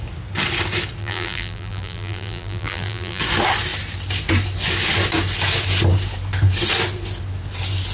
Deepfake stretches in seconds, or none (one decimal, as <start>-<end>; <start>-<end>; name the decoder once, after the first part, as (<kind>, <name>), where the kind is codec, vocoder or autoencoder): 1.0-3.2 (vocoder, BigVGAN v2)